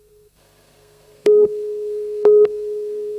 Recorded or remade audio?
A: remade